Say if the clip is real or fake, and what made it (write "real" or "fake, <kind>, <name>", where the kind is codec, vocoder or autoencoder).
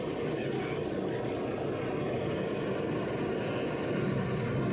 real